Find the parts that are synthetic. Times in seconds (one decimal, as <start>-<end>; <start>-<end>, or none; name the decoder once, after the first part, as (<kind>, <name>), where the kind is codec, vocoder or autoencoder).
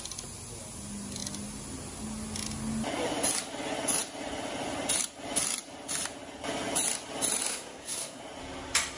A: 7.5-8.2 (codec, SNAC)